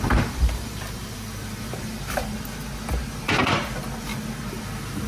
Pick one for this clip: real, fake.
fake